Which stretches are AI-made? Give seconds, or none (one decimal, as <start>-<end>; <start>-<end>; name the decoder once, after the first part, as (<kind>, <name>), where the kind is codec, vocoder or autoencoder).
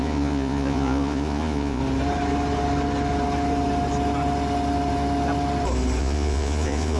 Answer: 0.0-1.8 (vocoder, Vocos); 6.0-7.0